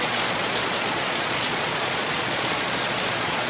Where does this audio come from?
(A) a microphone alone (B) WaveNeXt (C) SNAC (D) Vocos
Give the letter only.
D